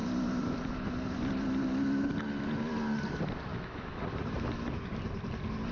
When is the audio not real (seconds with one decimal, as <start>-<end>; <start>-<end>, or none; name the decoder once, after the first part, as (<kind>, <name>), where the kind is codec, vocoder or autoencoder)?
3.5-4.0 (autoencoder, DAC-VAE)